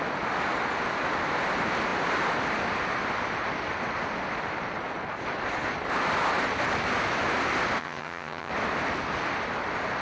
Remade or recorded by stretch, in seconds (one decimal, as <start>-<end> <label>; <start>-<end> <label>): 0.0-7.8 recorded; 7.8-8.5 remade; 8.5-10.0 recorded